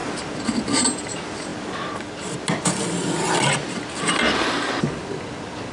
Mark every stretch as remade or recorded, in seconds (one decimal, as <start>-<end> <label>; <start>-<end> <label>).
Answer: 0.0-5.7 recorded